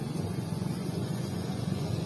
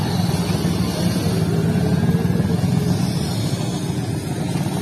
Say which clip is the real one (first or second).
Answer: second